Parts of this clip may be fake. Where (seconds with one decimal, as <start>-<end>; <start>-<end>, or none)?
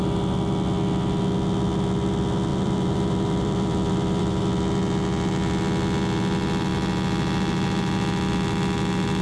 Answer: 2.5-4.4